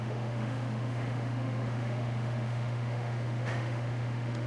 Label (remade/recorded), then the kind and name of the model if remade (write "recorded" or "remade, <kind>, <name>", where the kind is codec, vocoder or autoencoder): remade, autoencoder, DAC-VAE